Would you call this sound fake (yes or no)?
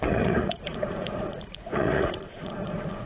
yes